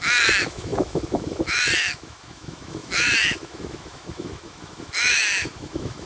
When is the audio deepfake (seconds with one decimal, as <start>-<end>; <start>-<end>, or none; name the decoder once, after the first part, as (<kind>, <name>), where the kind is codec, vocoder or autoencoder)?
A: 0.0-6.1 (autoencoder, DAC-VAE)